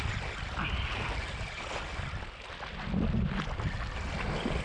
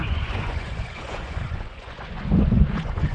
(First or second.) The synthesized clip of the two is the second